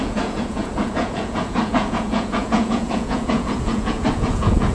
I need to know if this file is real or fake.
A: fake